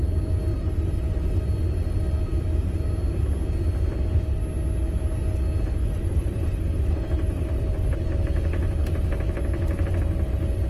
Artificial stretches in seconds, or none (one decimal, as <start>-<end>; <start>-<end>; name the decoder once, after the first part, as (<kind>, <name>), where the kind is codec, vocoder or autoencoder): 0.5-1.9 (vocoder, BigVGAN v2); 5.8-8.2